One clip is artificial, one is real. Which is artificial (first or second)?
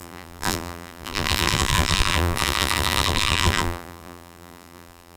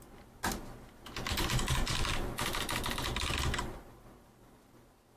first